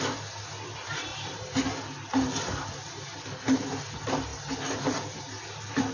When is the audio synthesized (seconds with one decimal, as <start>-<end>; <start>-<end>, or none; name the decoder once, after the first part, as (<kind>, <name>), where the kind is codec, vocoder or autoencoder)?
none